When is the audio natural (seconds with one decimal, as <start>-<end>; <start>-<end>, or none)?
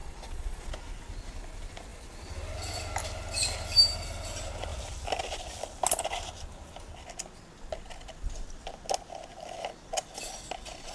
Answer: 0.7-10.9